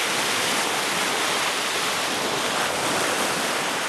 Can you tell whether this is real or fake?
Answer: fake